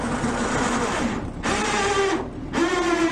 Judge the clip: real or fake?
real